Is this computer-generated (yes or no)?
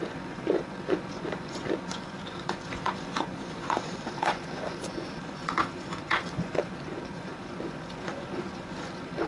yes